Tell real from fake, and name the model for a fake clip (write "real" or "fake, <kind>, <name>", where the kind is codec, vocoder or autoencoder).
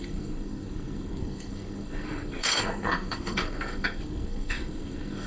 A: fake, codec, SNAC